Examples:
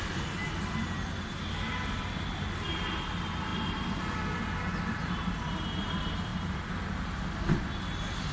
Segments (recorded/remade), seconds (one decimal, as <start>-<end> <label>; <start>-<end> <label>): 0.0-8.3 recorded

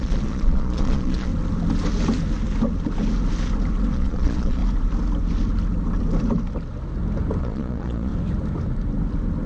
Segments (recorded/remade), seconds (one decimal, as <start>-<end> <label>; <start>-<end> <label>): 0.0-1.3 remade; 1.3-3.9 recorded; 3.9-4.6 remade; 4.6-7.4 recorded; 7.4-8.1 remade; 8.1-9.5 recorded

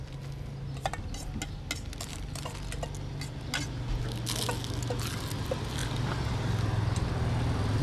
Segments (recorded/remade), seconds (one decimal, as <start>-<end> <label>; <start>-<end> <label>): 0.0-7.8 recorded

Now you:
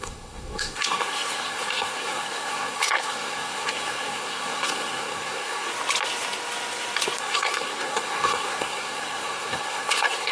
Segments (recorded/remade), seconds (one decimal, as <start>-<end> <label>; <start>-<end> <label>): 0.0-5.7 remade; 5.7-7.2 recorded; 7.2-10.3 remade

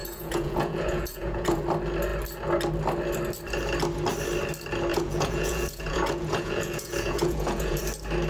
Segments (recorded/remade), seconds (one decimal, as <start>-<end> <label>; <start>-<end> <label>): 0.0-1.6 remade; 1.6-4.9 recorded; 4.9-7.8 remade; 7.8-8.3 recorded

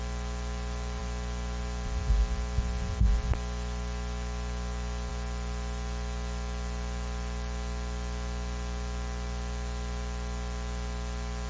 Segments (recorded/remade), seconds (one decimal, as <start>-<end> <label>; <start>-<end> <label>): 0.0-11.5 recorded

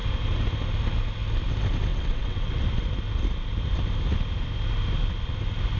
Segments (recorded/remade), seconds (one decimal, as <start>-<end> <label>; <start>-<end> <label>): 0.0-1.9 recorded; 1.9-2.6 remade; 2.6-5.8 recorded

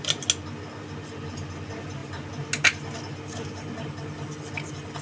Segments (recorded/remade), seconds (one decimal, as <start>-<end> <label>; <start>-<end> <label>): 0.0-5.0 recorded